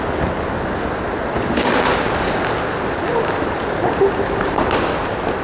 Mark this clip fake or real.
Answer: real